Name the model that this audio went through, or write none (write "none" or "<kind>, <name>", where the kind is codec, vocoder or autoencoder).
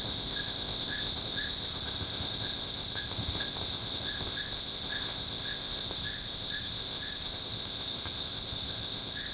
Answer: codec, ZipCodec